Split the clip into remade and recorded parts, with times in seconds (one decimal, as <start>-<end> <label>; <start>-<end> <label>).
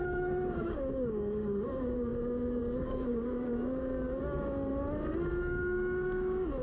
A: 0.0-4.7 remade; 4.7-5.3 recorded; 5.3-6.6 remade